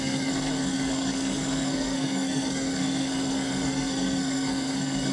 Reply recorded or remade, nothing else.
remade